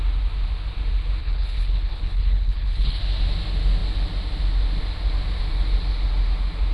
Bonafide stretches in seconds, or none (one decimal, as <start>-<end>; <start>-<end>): 0.0-1.2; 3.0-6.7